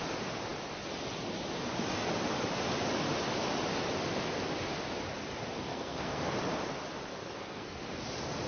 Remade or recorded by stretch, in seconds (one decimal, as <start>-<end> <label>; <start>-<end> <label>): 0.0-5.7 recorded; 5.7-6.3 remade; 6.3-7.1 recorded; 7.1-7.8 remade; 7.8-8.5 recorded